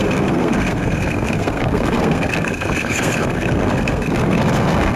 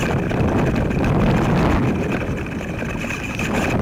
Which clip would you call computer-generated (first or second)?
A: first